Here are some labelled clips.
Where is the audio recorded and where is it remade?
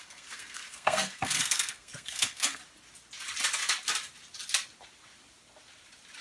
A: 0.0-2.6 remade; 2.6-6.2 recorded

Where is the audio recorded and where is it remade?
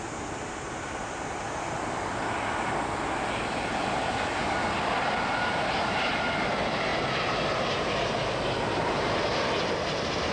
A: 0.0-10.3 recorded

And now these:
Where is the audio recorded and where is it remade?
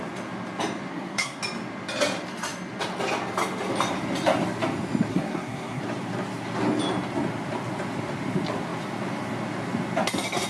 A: 0.0-0.9 recorded; 0.9-1.4 remade; 1.4-5.1 recorded; 5.1-5.8 remade; 5.8-10.5 recorded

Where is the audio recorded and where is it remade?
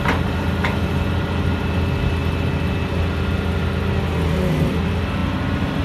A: 0.0-5.8 recorded